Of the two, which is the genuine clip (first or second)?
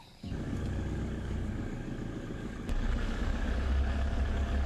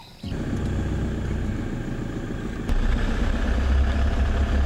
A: second